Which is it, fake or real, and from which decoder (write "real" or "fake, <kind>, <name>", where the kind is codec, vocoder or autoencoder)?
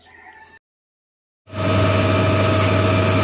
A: real